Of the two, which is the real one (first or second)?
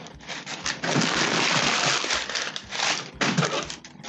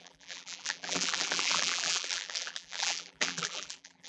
first